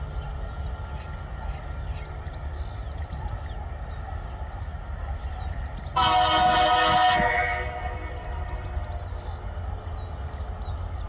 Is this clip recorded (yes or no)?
yes